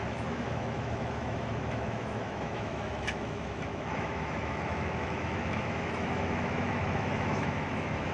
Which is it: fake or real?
fake